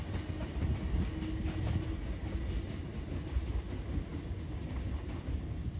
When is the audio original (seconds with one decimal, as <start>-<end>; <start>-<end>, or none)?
0.0-5.8